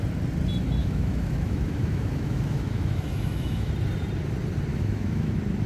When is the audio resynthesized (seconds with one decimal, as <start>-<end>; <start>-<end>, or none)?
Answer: 0.8-3.7; 4.7-5.3